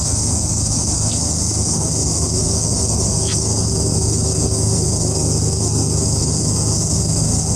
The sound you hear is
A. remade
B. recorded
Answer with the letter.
A